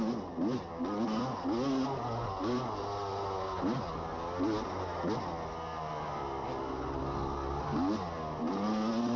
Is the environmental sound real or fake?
real